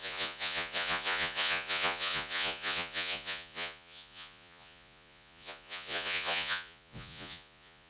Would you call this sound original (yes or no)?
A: no